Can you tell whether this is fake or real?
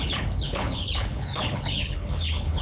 fake